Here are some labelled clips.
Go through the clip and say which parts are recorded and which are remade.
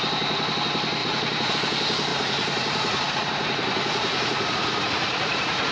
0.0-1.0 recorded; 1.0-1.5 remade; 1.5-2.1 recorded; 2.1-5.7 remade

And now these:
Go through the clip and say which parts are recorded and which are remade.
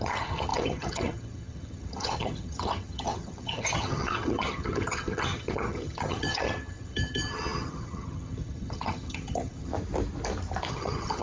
0.0-9.7 remade; 9.7-10.7 recorded; 10.7-11.2 remade